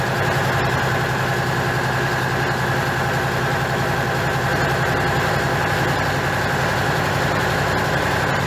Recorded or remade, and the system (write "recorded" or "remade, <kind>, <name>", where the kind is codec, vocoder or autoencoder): recorded